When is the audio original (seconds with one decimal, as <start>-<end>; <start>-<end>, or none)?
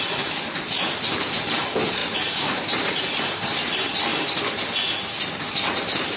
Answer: 4.1-5.0